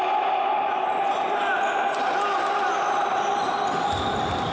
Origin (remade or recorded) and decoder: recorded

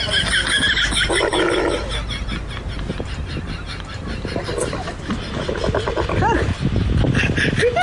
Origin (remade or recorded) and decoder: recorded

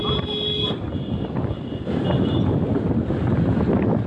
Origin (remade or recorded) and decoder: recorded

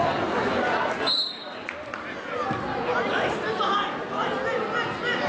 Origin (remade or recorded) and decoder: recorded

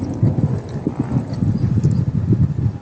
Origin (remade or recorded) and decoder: recorded